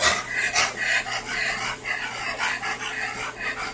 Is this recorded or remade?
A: recorded